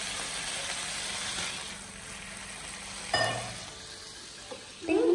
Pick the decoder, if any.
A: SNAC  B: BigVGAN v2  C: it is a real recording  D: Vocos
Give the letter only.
C